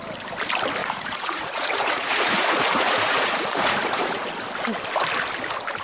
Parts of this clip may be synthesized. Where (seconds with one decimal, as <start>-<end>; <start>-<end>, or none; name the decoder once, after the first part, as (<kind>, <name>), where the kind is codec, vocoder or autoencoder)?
0.8-4.3 (vocoder, Vocos)

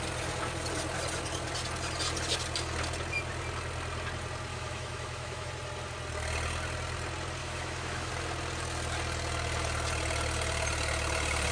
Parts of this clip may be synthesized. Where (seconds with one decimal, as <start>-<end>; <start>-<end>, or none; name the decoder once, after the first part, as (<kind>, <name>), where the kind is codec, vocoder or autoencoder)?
4.5-5.5 (autoencoder, DAC-VAE); 7.4-8.1